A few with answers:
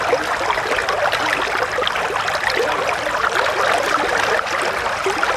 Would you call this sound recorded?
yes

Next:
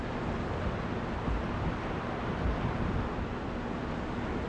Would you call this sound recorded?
yes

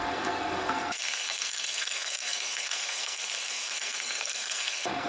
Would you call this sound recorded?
no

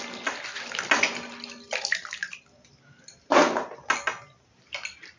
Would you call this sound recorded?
yes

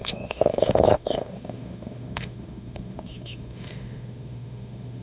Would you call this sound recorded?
no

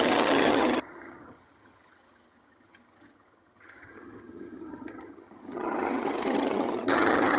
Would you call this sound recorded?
no